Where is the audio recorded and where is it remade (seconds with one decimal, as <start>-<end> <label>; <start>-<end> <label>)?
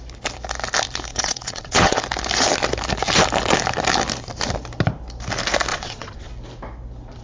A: 0.0-1.1 recorded; 1.1-2.0 remade; 2.0-5.7 recorded; 5.7-6.3 remade; 6.3-7.2 recorded